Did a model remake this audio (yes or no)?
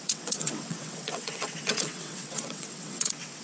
yes